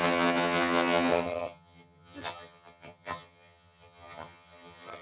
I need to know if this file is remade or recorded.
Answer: remade